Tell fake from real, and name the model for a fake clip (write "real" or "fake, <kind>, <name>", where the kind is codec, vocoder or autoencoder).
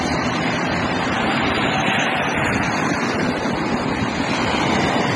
fake, vocoder, BigVGAN v2